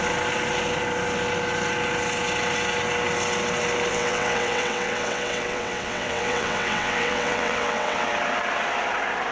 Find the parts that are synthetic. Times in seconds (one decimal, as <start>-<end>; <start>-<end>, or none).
3.9-8.1